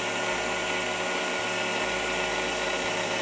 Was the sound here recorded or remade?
recorded